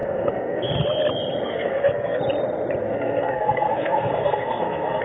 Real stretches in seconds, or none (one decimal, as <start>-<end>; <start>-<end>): 0.7-1.5; 2.2-2.8